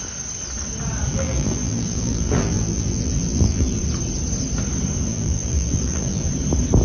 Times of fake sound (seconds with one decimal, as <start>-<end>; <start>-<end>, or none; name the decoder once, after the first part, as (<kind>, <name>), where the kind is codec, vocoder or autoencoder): 1.1-3.8 (vocoder, BigVGAN v2); 5.1-6.3